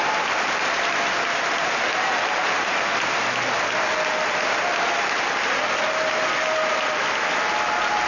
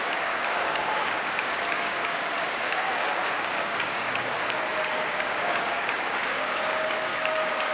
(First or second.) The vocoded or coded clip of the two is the second